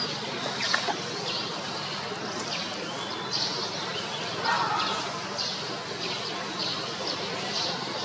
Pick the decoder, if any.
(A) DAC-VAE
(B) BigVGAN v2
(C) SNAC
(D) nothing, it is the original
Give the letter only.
D